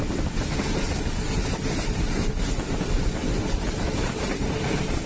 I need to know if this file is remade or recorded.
recorded